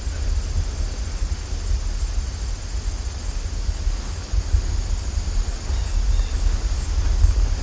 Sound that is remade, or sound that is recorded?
recorded